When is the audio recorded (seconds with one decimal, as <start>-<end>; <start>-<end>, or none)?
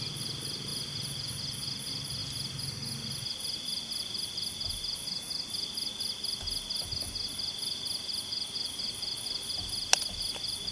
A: 0.0-10.7